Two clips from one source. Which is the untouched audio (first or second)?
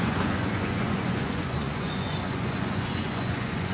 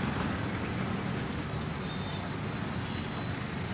second